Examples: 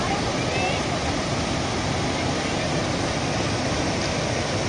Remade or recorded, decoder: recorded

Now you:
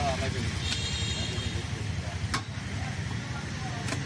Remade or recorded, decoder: recorded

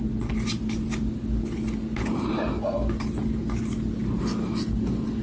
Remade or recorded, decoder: recorded